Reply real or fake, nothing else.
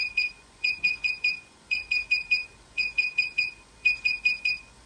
fake